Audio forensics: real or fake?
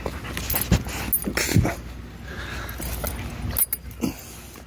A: real